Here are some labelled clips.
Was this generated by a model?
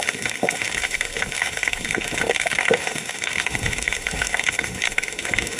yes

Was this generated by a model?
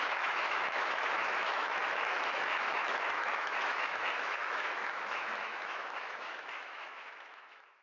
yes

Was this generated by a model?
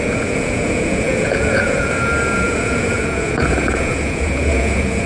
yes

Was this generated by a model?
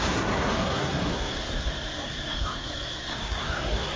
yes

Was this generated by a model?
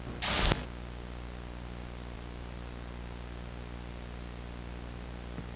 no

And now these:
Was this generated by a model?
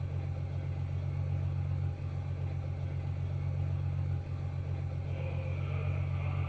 no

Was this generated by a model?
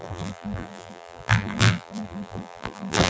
yes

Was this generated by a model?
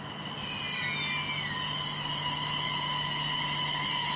no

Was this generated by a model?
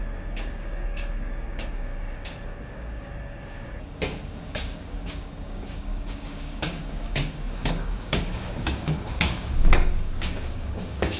yes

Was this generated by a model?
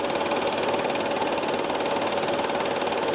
no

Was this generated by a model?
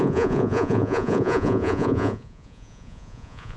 yes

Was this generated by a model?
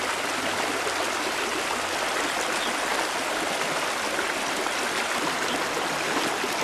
no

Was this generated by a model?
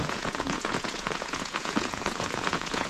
yes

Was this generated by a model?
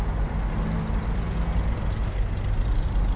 no